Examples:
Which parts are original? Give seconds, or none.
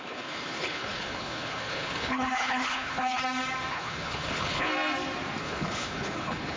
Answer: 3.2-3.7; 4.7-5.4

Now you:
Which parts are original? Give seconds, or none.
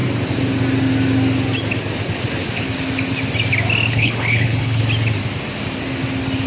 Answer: 0.0-3.9; 4.8-6.5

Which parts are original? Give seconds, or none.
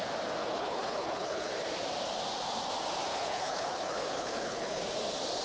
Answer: 0.0-0.4; 1.5-3.1; 4.8-5.4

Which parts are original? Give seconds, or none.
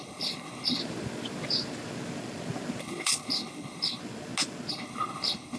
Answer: 0.8-2.8; 4.0-4.7